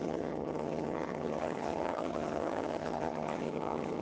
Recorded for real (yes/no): no